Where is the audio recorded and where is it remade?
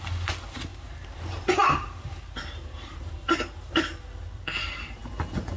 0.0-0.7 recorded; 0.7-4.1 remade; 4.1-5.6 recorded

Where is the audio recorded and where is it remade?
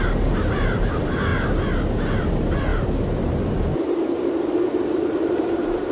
0.0-1.3 remade; 1.3-2.2 recorded; 2.2-2.7 remade; 2.7-4.2 recorded; 4.2-5.9 remade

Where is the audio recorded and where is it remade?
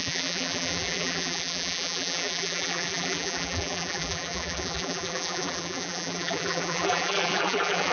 0.0-7.9 remade